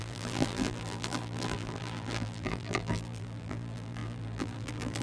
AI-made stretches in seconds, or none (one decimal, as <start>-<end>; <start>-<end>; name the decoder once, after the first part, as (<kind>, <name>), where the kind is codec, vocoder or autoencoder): 0.0-5.0 (vocoder, BigVGAN v2)